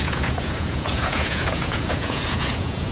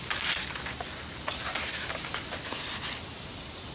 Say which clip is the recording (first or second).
second